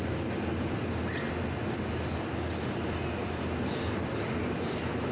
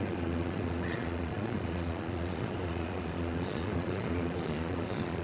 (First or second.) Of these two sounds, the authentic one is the first